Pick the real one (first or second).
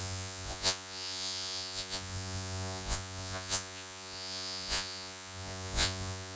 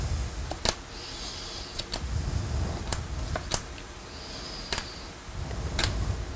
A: second